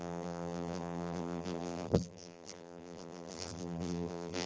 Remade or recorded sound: remade